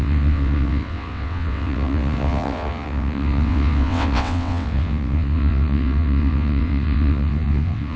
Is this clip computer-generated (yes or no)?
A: yes